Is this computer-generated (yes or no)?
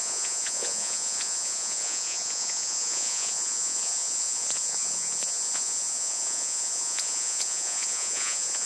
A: yes